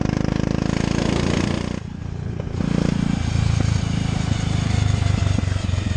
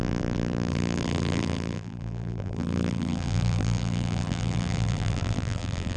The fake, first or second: second